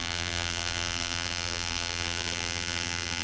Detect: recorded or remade remade